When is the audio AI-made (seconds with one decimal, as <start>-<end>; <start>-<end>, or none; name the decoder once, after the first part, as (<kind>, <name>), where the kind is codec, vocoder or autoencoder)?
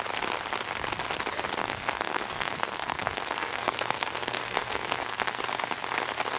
1.6-5.4 (codec, SNAC)